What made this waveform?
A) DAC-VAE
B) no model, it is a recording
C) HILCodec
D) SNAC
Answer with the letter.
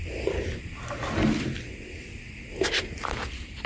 B